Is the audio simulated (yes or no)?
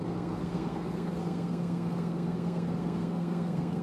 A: yes